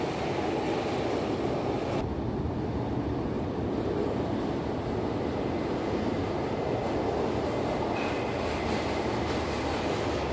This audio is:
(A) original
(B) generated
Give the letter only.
A